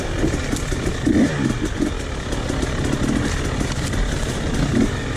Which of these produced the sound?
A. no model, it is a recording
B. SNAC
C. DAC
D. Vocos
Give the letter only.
A